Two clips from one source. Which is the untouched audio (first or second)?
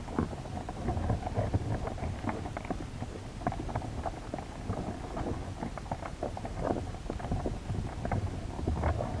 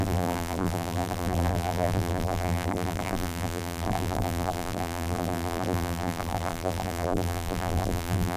first